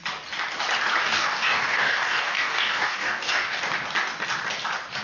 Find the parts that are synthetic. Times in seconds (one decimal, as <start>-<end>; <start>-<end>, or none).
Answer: 1.0-3.6